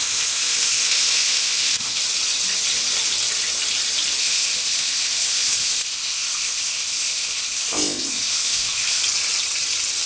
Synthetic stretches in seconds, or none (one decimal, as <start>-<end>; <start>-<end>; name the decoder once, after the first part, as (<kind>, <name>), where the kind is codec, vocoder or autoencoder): 0.0-2.0 (codec, ZipCodec); 4.2-9.0